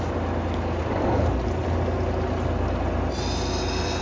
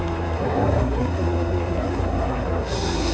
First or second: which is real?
first